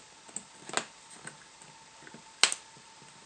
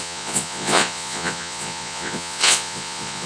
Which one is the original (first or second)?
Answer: first